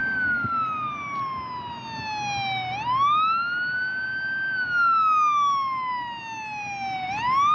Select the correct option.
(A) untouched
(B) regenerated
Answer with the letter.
A